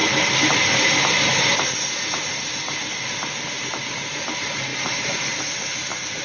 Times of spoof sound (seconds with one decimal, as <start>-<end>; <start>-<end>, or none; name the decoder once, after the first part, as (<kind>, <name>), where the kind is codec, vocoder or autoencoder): 4.7-5.4 (vocoder, BigVGAN v2)